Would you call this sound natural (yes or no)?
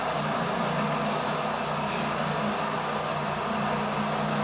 yes